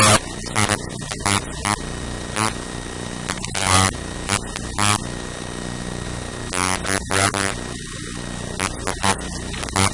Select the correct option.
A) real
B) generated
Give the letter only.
A